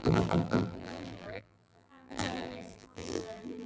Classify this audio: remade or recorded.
remade